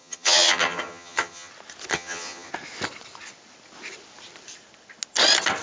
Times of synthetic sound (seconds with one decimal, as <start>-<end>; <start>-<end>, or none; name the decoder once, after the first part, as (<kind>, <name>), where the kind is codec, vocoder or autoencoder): 0.0-1.5 (vocoder, HiFi-GAN); 1.9-2.5